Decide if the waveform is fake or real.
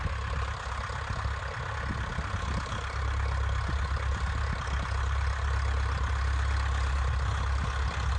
real